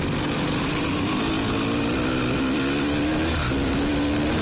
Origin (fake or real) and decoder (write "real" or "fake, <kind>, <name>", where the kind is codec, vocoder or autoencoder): real